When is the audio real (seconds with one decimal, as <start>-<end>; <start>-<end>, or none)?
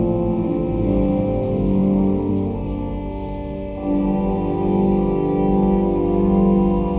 0.0-7.0